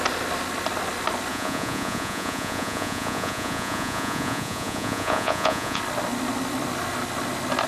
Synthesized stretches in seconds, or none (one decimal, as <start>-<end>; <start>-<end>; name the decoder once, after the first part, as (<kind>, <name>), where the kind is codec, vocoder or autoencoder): 1.3-5.8 (vocoder, Vocos)